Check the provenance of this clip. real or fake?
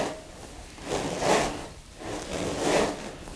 real